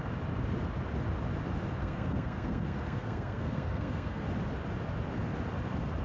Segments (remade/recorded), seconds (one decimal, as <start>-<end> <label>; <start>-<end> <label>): 0.0-1.8 recorded; 1.8-4.2 remade; 4.2-6.0 recorded